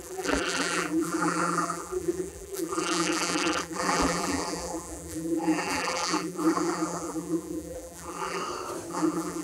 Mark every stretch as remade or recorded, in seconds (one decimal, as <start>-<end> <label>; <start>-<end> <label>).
0.0-8.4 remade; 8.4-8.9 recorded; 8.9-9.4 remade